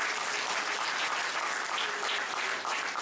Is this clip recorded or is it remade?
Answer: recorded